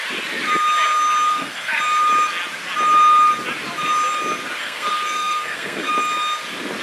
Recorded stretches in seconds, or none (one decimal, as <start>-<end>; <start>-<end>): 0.0-1.3; 1.8-4.6; 5.9-6.8

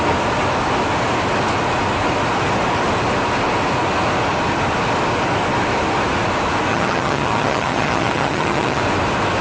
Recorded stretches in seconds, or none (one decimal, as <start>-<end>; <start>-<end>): 0.0-6.7; 8.8-9.4

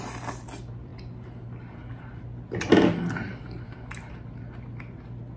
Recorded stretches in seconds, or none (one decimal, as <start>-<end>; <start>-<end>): 0.0-5.4

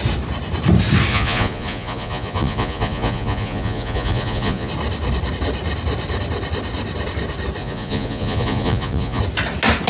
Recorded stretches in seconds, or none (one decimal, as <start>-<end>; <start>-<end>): 0.0-1.1; 4.7-7.6; 9.2-9.9

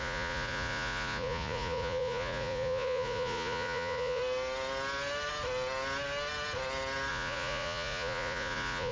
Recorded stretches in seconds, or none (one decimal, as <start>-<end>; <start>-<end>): 4.2-7.1

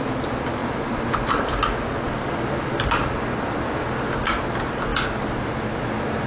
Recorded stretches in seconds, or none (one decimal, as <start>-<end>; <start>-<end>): 0.0-6.3

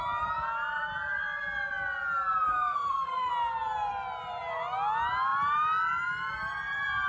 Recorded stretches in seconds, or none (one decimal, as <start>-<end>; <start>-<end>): 0.0-2.5; 3.3-7.1